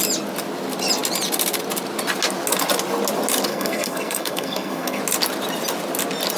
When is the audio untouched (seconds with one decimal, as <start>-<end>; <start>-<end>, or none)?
0.0-3.5; 5.0-6.4